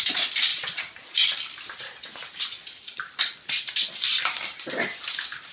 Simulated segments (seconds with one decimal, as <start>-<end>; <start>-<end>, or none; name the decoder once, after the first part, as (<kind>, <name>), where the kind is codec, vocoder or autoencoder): none